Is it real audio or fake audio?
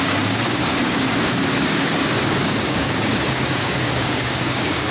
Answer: fake